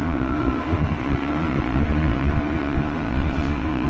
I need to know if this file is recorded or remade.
remade